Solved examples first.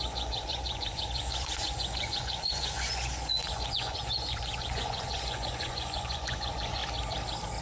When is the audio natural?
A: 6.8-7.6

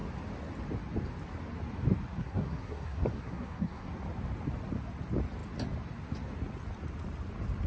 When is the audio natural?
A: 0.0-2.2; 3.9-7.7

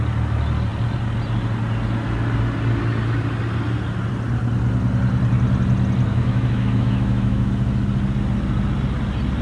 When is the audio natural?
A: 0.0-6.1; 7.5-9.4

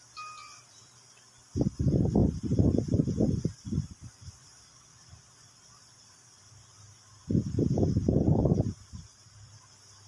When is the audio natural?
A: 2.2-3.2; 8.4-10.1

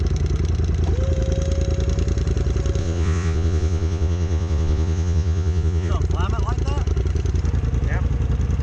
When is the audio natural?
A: 0.0-2.8; 5.9-8.6